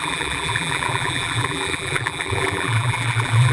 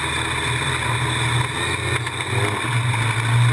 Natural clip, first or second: second